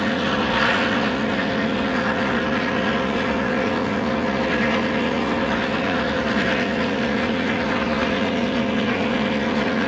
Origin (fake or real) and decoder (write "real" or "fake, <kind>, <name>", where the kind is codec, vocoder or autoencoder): fake, vocoder, Vocos